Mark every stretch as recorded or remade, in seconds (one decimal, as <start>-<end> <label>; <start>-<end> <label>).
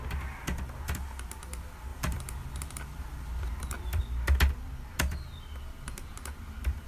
0.0-1.9 recorded; 1.9-4.0 remade; 4.0-6.1 recorded; 6.1-6.9 remade